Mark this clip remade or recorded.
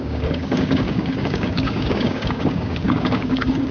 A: remade